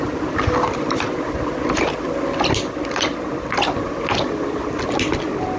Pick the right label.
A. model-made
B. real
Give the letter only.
B